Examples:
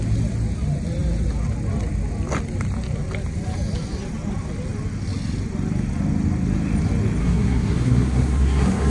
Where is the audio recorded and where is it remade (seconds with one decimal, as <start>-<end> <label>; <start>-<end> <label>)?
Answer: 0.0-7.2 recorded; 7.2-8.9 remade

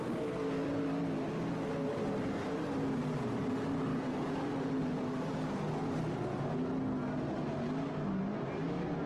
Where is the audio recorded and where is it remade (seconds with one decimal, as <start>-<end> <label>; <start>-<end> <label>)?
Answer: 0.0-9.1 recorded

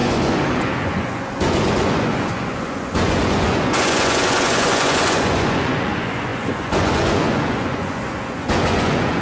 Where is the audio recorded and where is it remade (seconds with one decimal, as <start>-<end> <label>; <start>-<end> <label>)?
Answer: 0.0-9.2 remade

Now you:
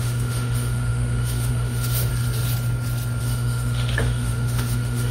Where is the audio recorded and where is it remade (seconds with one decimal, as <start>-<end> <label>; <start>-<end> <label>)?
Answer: 0.0-2.1 remade; 2.1-3.2 recorded; 3.2-5.1 remade

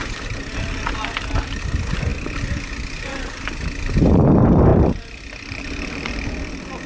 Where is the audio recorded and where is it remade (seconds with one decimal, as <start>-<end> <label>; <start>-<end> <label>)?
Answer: 0.0-6.9 recorded